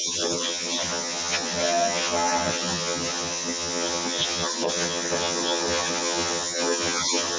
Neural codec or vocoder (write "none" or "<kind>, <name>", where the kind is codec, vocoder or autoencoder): vocoder, HiFi-GAN